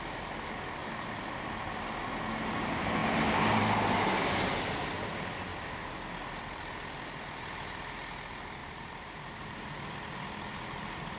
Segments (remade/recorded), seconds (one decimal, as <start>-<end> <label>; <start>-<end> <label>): 0.0-8.6 recorded; 8.6-9.9 remade; 9.9-11.2 recorded